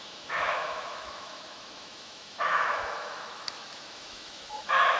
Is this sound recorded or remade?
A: remade